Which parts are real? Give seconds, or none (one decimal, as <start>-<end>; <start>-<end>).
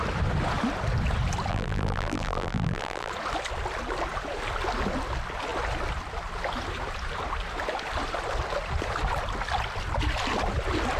0.0-1.5; 3.1-11.0